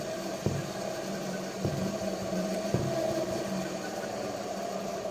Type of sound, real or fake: fake